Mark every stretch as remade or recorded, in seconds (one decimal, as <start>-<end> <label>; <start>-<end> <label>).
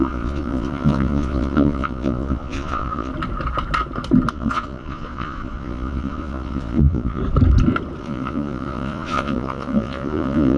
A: 0.0-3.1 remade; 3.1-4.3 recorded; 4.3-7.2 remade; 7.2-8.0 recorded; 8.0-10.6 remade